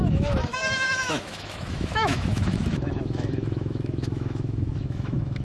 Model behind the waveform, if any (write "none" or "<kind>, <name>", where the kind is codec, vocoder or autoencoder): autoencoder, DAC-VAE